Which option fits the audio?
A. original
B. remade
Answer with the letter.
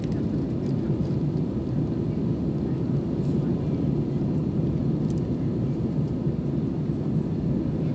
A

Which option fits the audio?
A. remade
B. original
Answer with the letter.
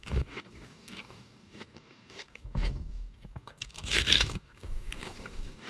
A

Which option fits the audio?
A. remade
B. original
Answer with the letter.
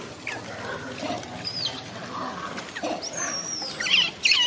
B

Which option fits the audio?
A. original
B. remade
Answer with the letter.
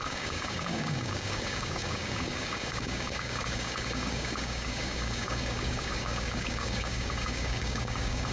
B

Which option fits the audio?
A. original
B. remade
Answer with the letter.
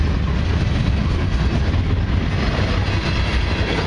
A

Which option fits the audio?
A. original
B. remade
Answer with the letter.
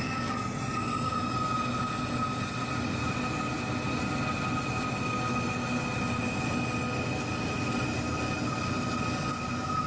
A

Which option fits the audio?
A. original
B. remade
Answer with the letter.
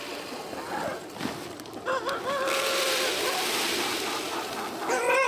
A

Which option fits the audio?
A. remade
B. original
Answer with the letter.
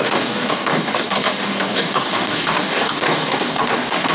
A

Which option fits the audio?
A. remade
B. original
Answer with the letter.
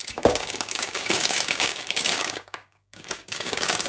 A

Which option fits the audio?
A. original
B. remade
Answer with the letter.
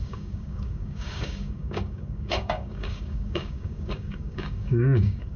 B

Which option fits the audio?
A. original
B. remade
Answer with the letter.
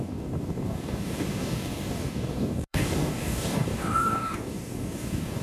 B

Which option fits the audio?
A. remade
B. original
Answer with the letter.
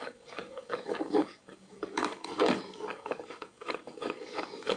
A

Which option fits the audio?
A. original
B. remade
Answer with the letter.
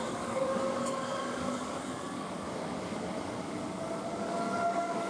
B